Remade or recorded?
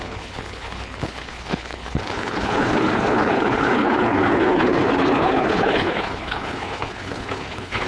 remade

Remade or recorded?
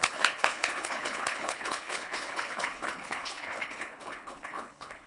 remade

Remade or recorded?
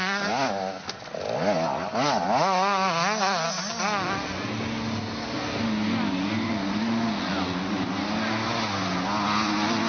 recorded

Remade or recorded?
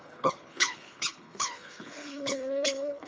remade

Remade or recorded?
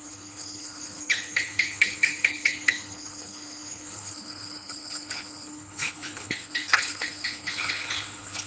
remade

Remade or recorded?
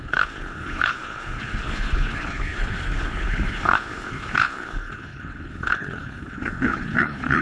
remade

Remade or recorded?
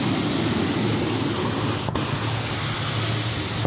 recorded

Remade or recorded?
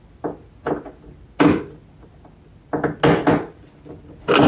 recorded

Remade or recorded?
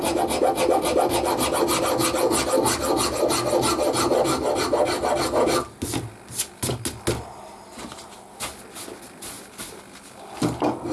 recorded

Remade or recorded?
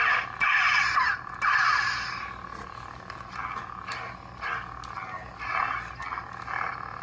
recorded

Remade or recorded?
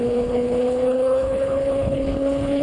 remade